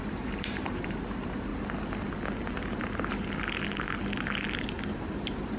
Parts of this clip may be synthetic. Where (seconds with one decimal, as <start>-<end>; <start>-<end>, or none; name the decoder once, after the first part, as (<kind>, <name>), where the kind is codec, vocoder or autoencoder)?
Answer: 0.0-1.5 (vocoder, BigVGAN v2); 4.9-5.6